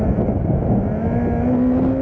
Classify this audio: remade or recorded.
recorded